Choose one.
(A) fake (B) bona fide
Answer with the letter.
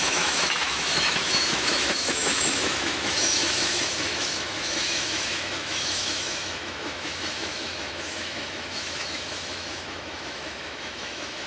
A